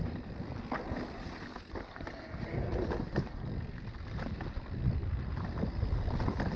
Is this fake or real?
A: real